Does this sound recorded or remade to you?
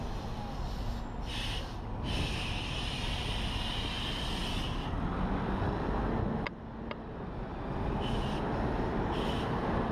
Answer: recorded